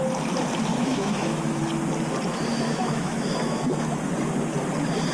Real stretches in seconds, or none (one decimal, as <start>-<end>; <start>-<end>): 0.0-0.7; 1.6-2.5; 4.0-5.1